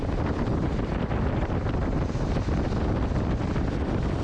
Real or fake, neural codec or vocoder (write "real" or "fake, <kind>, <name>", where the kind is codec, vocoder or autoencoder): real